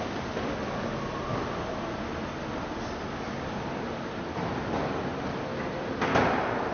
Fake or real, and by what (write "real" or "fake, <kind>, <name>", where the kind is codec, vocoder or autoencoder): real